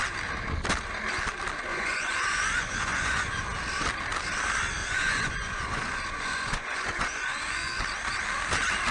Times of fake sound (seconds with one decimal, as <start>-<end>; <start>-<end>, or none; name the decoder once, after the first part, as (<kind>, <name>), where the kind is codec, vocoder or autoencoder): 1.7-3.4 (vocoder, Vocos); 4.8-7.8